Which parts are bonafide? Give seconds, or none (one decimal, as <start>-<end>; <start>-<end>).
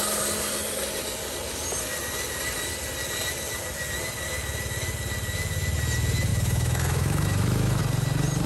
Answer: 0.0-6.3; 7.8-8.5